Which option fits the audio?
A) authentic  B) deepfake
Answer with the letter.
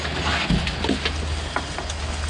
A